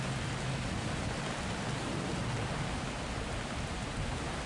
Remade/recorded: recorded